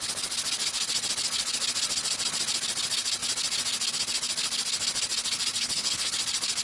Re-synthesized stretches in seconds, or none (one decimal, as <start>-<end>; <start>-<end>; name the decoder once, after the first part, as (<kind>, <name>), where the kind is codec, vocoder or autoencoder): 5.6-6.1 (codec, HILCodec)